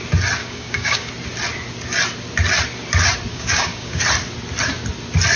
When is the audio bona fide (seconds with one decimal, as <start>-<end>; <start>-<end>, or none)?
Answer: 0.0-0.4; 1.1-3.3; 4.0-5.4